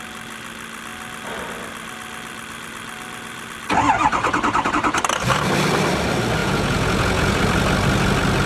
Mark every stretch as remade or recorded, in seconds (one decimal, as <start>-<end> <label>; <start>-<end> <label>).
0.0-6.4 recorded; 6.4-7.4 remade; 7.4-8.5 recorded